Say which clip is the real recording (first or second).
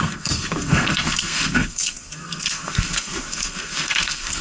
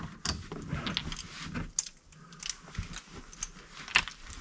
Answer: second